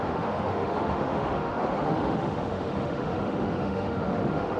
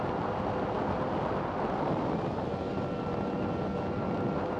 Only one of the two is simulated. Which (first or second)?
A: first